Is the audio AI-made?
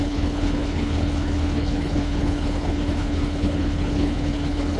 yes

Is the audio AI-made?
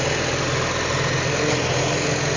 no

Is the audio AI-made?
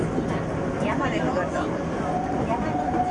no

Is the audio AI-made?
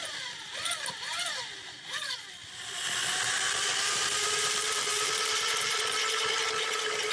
yes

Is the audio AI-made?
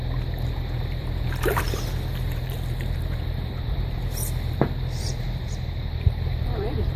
yes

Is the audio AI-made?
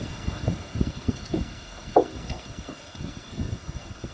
yes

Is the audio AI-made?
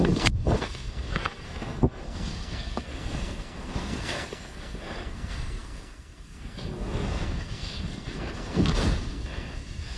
yes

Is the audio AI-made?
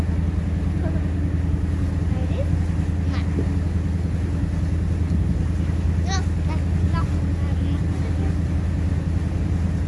no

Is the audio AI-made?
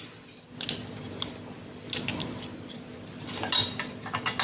no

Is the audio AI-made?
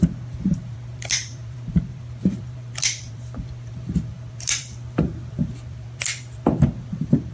yes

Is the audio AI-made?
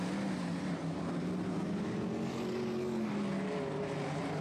no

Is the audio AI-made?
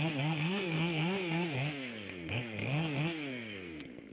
yes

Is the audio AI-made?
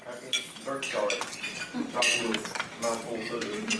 no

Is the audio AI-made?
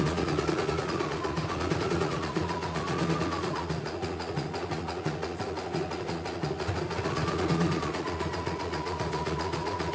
yes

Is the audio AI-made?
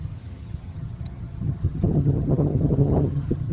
yes